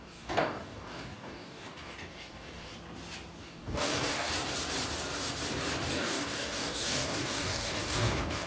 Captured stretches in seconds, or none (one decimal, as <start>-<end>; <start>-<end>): 2.7-3.4; 4.3-5.9